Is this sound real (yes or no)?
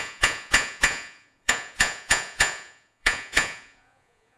no